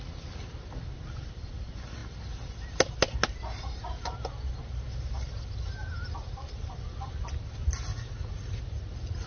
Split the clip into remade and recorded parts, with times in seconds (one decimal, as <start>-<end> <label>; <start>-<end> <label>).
0.0-7.9 recorded; 7.9-8.6 remade; 8.6-9.3 recorded